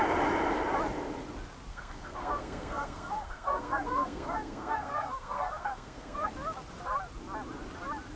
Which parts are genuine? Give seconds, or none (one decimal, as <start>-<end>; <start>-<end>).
0.0-1.7; 6.3-8.2